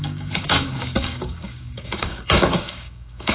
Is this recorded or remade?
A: remade